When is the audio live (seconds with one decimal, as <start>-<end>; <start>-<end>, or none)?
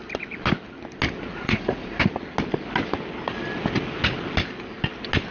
0.0-1.3; 2.0-5.3